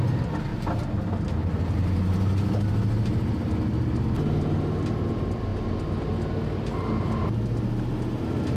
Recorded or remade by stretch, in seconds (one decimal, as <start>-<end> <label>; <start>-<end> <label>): 0.0-0.5 recorded; 0.5-1.6 remade; 1.6-8.6 recorded